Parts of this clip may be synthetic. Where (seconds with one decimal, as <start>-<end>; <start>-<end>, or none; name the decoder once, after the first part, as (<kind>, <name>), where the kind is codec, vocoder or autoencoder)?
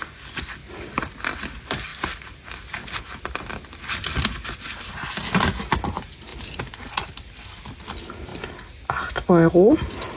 none